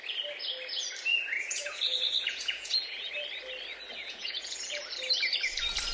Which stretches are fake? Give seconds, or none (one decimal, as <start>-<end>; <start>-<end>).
1.1-3.1; 4.0-4.9